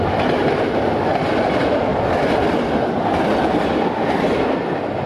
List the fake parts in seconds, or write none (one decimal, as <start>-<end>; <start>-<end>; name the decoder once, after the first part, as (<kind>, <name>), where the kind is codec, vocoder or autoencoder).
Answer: none